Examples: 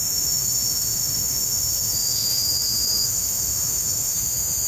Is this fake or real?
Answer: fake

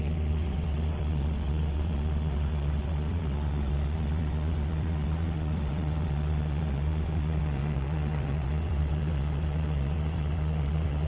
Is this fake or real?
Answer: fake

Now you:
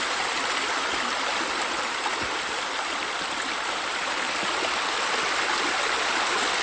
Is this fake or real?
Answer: real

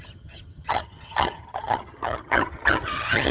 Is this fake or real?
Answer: fake